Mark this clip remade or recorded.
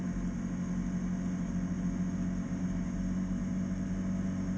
recorded